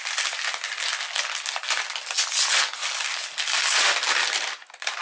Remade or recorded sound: recorded